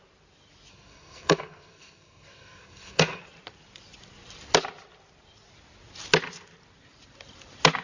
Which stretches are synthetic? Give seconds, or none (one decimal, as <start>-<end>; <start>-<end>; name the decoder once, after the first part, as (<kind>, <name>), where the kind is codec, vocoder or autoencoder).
0.7-3.2 (codec, SNAC)